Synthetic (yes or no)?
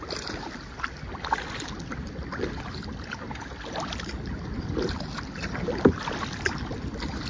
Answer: no